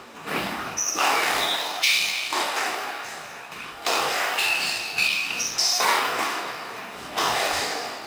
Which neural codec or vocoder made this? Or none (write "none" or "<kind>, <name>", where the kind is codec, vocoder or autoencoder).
codec, DAC